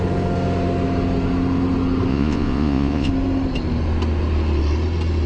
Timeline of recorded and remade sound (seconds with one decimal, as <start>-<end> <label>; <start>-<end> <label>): 0.0-2.1 recorded; 2.1-3.1 remade; 3.1-5.3 recorded